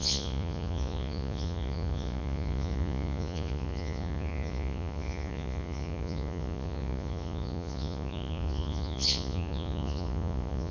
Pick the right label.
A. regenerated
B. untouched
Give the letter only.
A